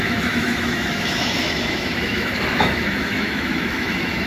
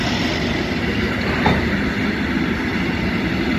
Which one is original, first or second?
second